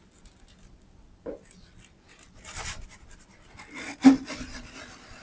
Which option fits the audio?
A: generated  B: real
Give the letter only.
B